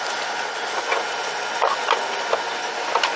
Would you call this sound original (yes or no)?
yes